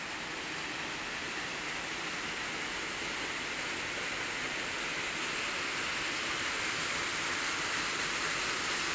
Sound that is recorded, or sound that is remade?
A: recorded